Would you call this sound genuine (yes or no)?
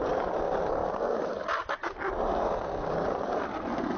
yes